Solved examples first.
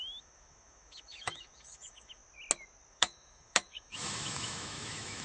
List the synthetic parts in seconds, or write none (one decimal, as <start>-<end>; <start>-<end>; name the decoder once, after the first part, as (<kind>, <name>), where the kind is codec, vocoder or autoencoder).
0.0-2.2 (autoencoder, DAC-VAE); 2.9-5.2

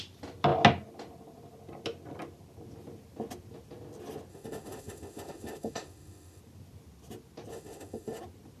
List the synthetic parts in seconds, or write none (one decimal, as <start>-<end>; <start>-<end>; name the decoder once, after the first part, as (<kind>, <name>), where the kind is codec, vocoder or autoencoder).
4.3-6.4 (autoencoder, DAC-VAE); 7.5-8.2

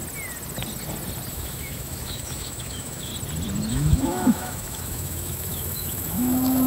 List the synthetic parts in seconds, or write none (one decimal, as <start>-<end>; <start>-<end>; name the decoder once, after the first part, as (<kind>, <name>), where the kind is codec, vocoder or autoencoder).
1.3-3.1 (autoencoder, DAC-VAE); 3.7-6.7

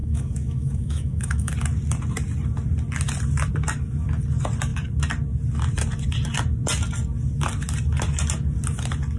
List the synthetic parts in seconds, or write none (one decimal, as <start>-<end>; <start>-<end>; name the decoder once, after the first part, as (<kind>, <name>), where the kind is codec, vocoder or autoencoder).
0.0-1.5 (autoencoder, DAC-VAE)

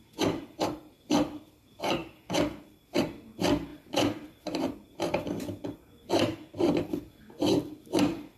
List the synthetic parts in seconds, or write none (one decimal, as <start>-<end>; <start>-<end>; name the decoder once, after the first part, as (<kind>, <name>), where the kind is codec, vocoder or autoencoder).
none

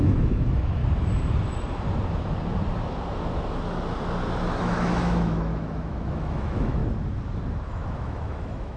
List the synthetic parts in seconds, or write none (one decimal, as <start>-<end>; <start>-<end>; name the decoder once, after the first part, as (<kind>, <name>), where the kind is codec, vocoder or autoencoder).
0.0-0.8 (autoencoder, DAC-VAE); 4.6-6.8; 7.7-8.8